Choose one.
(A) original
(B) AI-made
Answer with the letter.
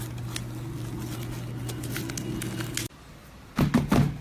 A